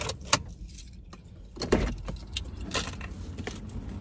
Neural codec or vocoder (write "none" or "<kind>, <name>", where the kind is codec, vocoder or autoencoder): none